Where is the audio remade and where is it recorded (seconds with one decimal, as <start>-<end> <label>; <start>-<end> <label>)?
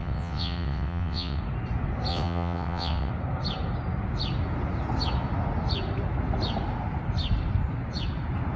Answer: 0.0-1.4 remade; 1.4-2.1 recorded; 2.1-3.1 remade; 3.1-8.6 recorded